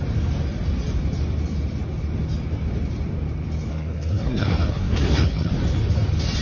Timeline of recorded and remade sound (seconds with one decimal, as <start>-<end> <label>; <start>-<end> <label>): 0.0-3.7 recorded; 3.7-5.5 remade; 5.5-6.4 recorded